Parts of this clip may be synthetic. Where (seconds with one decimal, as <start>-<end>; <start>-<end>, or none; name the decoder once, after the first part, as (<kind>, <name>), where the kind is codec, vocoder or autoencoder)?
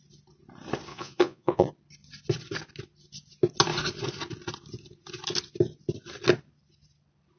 0.9-1.7 (vocoder, Vocos)